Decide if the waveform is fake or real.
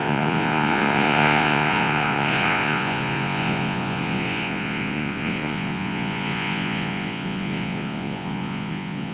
fake